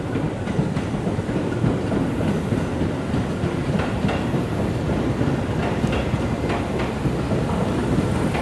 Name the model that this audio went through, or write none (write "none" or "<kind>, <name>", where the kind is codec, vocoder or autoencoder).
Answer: none